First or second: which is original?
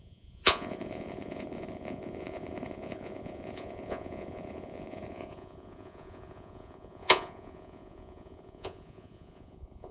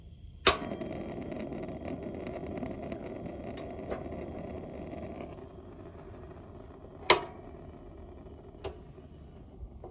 second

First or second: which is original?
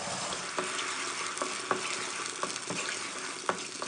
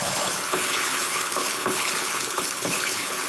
first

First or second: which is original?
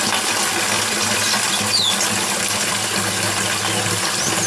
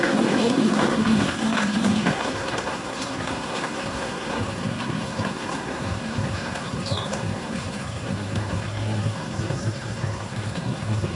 first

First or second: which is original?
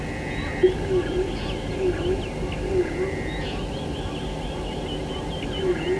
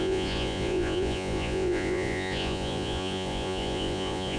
first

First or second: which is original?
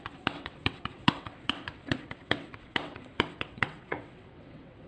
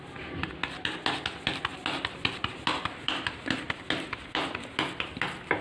second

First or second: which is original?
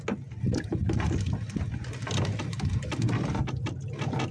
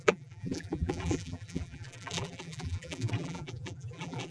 first